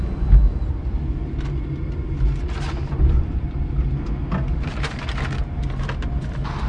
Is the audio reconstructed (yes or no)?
no